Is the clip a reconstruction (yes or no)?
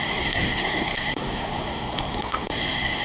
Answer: yes